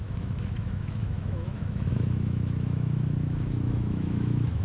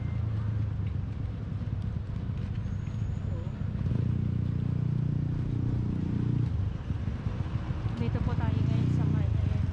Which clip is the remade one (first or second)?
first